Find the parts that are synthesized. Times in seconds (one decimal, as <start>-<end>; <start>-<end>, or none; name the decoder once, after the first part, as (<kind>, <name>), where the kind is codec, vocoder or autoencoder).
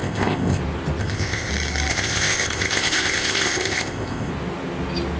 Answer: 0.0-0.6 (codec, ZipCodec); 1.0-1.5; 1.9-4.3